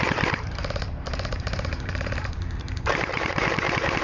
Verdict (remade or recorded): remade